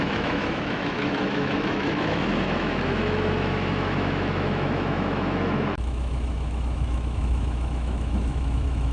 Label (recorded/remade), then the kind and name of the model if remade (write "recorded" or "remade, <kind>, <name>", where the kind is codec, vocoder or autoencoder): remade, autoencoder, DAC-VAE